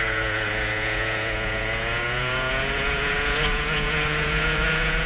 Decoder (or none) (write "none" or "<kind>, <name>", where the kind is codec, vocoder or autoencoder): vocoder, Vocos